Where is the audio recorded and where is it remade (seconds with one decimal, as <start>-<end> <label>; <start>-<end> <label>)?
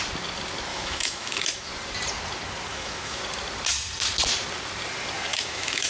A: 0.0-0.7 recorded; 0.7-1.7 remade; 1.7-2.7 recorded; 2.7-3.2 remade; 3.2-5.3 recorded; 5.3-5.9 remade